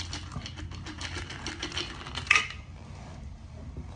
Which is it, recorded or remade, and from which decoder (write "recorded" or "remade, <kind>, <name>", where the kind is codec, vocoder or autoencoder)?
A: recorded